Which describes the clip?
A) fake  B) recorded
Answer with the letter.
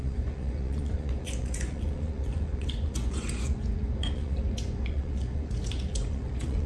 A